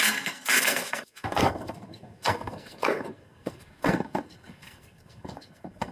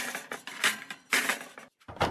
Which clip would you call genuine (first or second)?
second